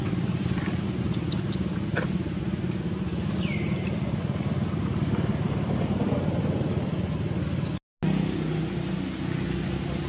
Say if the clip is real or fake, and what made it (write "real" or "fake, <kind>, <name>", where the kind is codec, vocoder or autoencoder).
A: real